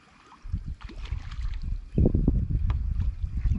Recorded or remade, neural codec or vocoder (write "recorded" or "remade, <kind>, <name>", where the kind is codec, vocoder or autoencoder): recorded